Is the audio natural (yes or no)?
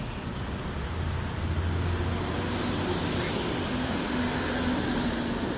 yes